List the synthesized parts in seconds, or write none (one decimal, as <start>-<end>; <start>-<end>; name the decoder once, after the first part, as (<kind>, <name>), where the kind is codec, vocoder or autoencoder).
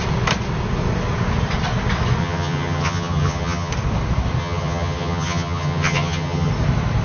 2.2-3.7 (vocoder, HiFi-GAN); 4.4-6.5